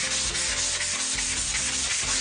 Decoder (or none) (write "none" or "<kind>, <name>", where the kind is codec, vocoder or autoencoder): none